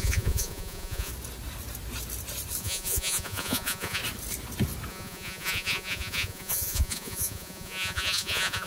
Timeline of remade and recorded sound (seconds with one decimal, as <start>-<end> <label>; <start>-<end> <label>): 0.0-1.1 remade; 1.1-2.6 recorded; 2.6-4.0 remade; 4.0-4.9 recorded; 4.9-8.7 remade